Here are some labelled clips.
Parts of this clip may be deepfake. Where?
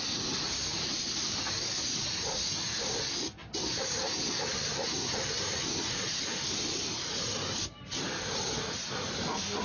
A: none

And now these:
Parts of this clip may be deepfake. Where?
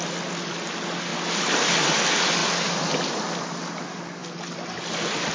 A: none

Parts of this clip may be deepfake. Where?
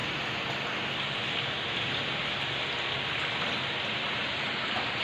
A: 3.0-5.0 (vocoder, BigVGAN v2)